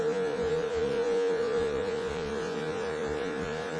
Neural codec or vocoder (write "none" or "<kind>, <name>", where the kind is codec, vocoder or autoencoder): vocoder, Vocos